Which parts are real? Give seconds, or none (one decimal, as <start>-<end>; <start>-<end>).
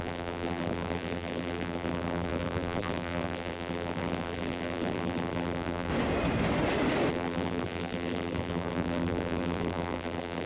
5.9-7.1